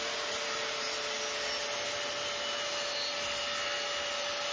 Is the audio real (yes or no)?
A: yes